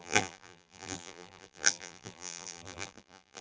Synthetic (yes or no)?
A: yes